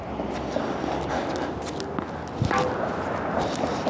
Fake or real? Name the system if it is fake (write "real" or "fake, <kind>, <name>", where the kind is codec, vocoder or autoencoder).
real